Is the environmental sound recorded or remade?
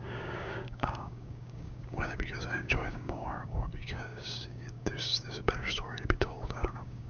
remade